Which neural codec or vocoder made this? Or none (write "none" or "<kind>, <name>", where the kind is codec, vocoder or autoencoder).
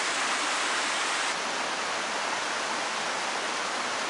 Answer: none